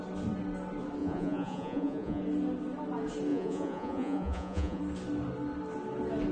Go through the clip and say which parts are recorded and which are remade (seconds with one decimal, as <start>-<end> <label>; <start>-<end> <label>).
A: 0.0-1.0 recorded; 1.0-2.2 remade; 2.2-3.3 recorded; 3.3-4.8 remade; 4.8-6.3 recorded